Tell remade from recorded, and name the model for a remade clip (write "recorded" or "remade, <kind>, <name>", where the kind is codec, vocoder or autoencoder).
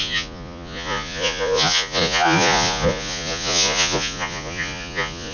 remade, vocoder, Vocos